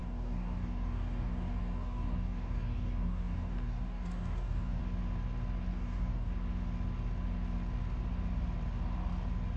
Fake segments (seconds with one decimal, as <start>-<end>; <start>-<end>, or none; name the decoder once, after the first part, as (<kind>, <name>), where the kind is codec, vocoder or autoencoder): 0.0-4.8 (codec, DAC); 5.7-6.3